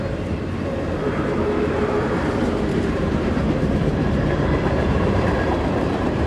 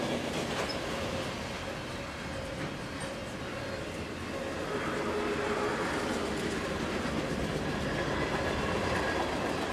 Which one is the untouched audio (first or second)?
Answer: second